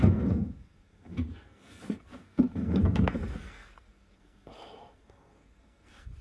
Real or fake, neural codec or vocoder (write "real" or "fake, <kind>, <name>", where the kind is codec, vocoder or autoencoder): fake, codec, SNAC